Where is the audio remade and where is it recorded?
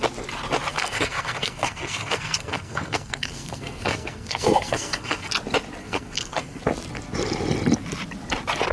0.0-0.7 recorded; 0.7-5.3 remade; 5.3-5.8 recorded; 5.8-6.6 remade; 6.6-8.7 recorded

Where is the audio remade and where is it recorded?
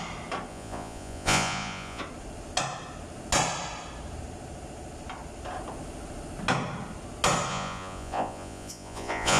0.0-0.5 recorded; 0.5-2.0 remade; 2.0-7.5 recorded; 7.5-9.4 remade